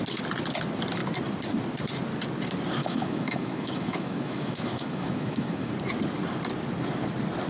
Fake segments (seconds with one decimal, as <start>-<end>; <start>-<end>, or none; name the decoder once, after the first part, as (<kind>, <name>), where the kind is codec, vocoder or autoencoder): 2.8-5.7 (autoencoder, DAC-VAE)